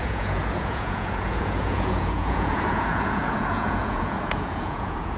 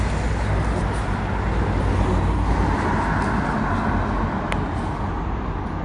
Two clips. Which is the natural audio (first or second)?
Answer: second